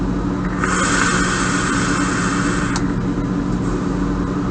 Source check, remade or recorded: recorded